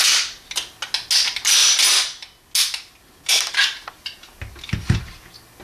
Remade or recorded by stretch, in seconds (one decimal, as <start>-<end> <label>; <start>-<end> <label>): 0.0-5.6 recorded

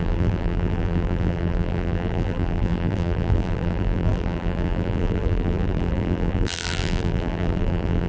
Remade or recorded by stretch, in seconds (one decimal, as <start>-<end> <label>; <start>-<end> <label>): 0.0-8.1 remade

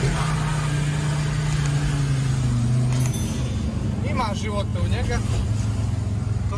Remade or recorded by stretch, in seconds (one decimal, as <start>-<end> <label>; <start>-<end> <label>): 0.0-6.6 recorded

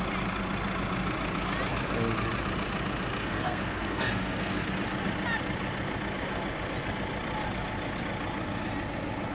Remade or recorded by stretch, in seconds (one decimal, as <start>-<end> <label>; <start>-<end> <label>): 0.0-3.2 recorded; 3.2-4.7 remade; 4.7-9.3 recorded

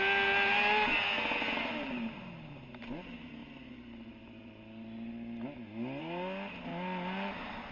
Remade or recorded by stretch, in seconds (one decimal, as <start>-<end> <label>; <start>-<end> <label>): 0.0-7.7 recorded

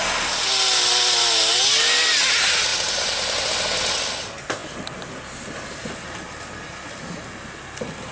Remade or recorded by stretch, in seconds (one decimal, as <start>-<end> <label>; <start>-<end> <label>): 0.0-2.7 recorded; 2.7-3.5 remade; 3.5-8.1 recorded

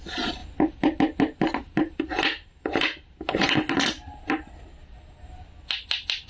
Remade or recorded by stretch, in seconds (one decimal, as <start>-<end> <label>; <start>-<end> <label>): 0.0-6.3 recorded

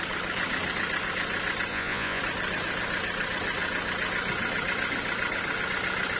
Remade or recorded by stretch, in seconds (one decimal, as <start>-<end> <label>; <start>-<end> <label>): 0.0-1.7 recorded; 1.7-2.2 remade; 2.2-6.2 recorded